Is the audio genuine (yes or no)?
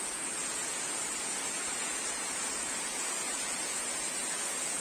no